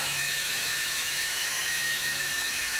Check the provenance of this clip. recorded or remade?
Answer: remade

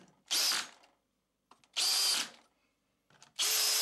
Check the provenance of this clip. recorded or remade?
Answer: recorded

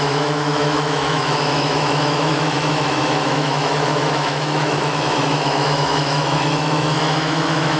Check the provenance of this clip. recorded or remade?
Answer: remade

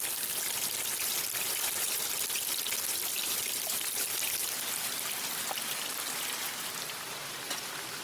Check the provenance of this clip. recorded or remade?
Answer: recorded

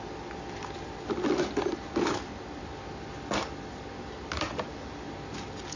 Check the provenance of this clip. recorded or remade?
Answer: recorded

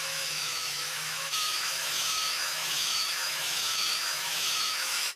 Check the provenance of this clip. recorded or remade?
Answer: remade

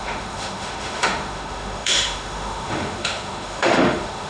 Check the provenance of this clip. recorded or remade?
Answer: remade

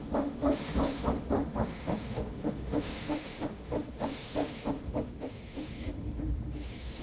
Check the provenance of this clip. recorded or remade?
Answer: remade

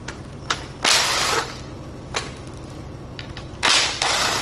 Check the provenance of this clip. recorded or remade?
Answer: recorded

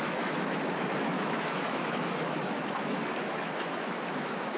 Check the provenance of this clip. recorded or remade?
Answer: remade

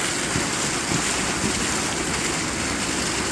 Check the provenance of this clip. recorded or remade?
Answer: recorded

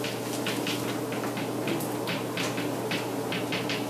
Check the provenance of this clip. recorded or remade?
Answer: recorded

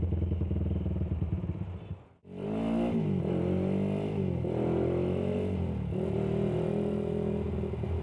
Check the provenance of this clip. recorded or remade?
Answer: recorded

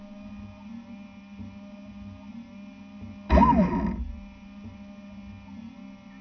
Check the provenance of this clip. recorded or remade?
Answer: recorded